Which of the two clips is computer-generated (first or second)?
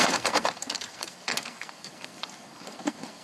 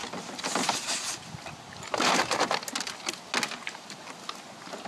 first